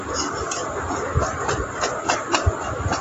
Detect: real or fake real